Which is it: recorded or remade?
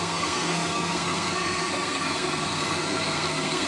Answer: remade